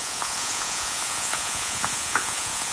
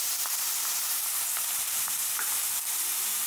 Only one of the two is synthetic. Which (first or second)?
first